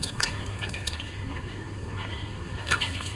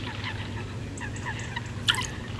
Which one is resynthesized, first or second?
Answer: first